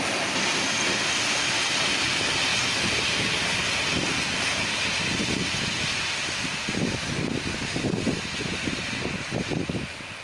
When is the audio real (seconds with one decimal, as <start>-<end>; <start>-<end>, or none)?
0.0-10.2